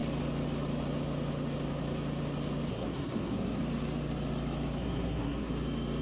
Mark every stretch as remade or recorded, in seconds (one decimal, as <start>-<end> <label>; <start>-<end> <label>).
0.0-2.7 recorded; 2.7-3.6 remade; 3.6-4.8 recorded; 4.8-5.5 remade; 5.5-6.0 recorded